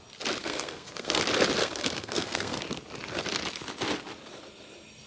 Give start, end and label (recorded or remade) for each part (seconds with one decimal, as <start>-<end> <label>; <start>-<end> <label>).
0.0-0.4 recorded; 0.4-1.2 remade; 1.2-1.6 recorded; 1.6-2.6 remade; 2.6-5.1 recorded